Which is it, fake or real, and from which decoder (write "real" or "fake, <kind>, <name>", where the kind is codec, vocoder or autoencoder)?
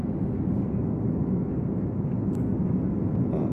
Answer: real